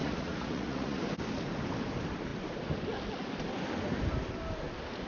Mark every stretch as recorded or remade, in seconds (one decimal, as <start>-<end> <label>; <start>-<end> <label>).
0.0-1.0 remade; 1.0-5.1 recorded